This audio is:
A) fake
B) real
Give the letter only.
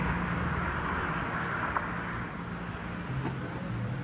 B